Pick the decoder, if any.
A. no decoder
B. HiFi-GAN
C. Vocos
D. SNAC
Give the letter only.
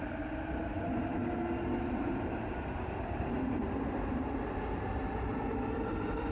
A